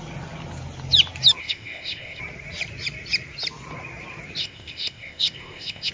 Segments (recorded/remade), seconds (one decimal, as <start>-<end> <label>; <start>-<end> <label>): 0.0-1.4 recorded; 1.4-2.2 remade; 2.2-4.4 recorded; 4.4-5.9 remade